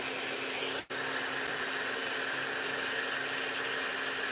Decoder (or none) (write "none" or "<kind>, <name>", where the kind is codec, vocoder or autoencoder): none